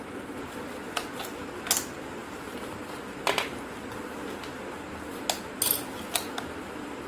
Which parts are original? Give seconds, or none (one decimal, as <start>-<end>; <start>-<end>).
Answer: 0.0-7.1